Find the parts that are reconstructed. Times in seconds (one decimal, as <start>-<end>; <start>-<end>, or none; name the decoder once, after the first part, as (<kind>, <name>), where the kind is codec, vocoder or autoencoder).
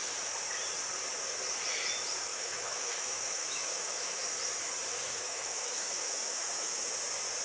2.3-4.2 (autoencoder, DAC-VAE); 4.9-6.9